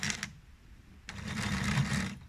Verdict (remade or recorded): recorded